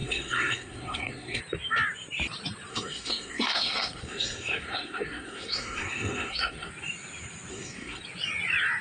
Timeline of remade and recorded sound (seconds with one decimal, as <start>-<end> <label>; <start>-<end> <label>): 0.0-1.4 remade; 1.4-2.7 recorded; 2.7-6.7 remade; 6.7-7.5 recorded; 7.5-8.0 remade; 8.0-8.8 recorded